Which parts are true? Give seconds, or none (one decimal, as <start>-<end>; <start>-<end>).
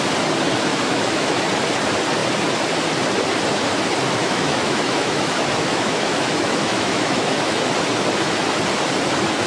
0.0-0.7; 1.4-4.2; 7.6-9.5